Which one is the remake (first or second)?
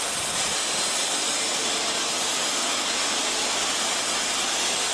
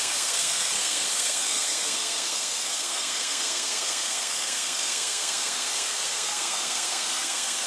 second